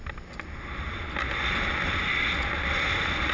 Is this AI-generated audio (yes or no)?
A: no